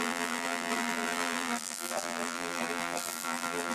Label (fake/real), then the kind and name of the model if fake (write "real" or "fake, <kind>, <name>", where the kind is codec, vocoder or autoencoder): fake, vocoder, BigVGAN v2